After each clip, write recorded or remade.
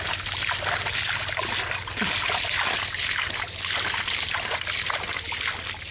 recorded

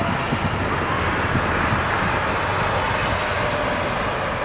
recorded